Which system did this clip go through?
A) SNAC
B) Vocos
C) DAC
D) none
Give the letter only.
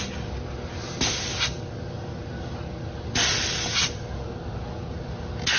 D